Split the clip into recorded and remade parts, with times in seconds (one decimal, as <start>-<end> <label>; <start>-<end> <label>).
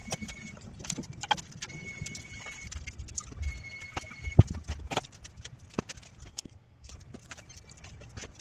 0.0-6.3 recorded; 6.3-6.9 remade; 6.9-8.4 recorded